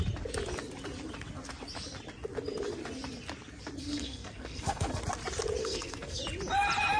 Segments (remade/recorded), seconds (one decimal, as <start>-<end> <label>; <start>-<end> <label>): 0.0-3.8 recorded; 3.8-5.0 remade; 5.0-5.6 recorded; 5.6-6.2 remade; 6.2-7.0 recorded

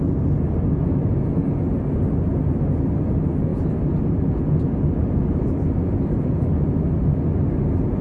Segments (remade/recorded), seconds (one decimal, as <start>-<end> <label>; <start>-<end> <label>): 0.0-8.0 recorded

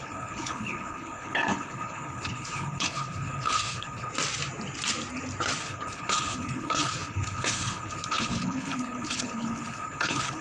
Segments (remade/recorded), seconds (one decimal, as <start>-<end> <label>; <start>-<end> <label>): 0.0-4.1 remade; 4.1-5.6 recorded; 5.6-10.4 remade

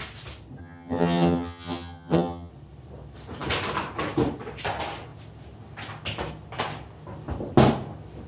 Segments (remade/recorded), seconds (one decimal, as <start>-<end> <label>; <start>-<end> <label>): 0.0-0.6 recorded; 0.6-2.5 remade; 2.5-8.3 recorded

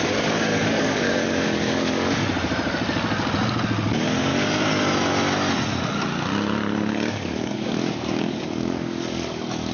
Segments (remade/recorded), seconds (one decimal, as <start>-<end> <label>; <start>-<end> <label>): 0.0-2.2 remade; 2.2-3.9 recorded; 3.9-4.3 remade; 4.3-7.1 recorded; 7.1-9.7 remade